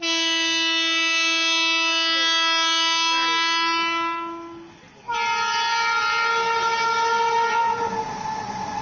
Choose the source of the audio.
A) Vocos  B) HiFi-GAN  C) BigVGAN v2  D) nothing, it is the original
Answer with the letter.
D